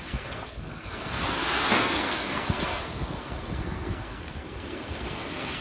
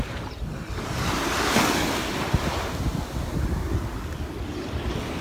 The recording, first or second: second